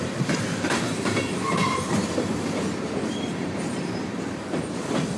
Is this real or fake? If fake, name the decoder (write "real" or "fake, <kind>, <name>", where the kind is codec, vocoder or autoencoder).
fake, vocoder, BigVGAN v2